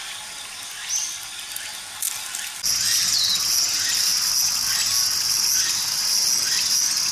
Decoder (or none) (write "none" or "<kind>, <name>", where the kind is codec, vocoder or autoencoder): none